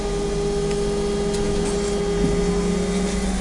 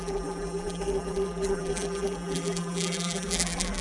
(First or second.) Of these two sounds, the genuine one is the first